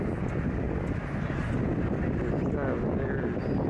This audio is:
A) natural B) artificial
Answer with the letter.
A